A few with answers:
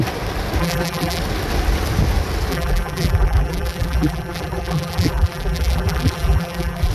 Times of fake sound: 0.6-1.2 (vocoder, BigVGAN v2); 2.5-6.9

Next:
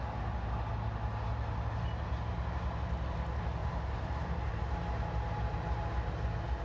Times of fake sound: 3.6-4.6 (vocoder, BigVGAN v2)

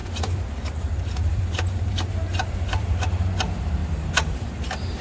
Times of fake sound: 0.0-3.0 (vocoder, BigVGAN v2); 3.8-5.0

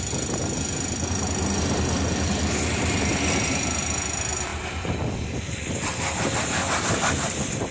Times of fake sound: 4.5-6.8 (vocoder, BigVGAN v2)

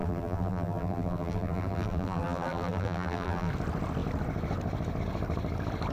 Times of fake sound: 0.0-3.5 (vocoder, BigVGAN v2)

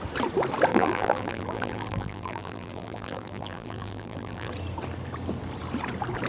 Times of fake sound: 0.7-4.5 (vocoder, BigVGAN v2)

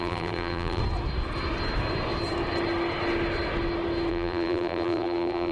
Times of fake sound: 0.0-0.8 (vocoder, BigVGAN v2); 4.1-5.5